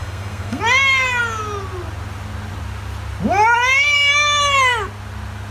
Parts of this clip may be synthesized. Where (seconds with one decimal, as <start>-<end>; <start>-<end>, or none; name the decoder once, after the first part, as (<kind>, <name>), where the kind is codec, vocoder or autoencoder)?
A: 0.0-0.6 (codec, SNAC)